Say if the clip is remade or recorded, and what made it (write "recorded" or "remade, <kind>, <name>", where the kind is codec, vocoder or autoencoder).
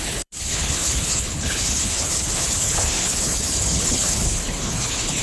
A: remade, codec, HILCodec